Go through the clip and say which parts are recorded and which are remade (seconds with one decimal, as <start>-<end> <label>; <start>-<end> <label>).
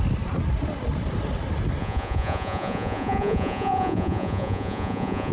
0.0-1.8 recorded; 1.8-5.3 remade